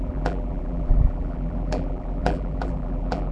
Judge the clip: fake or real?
fake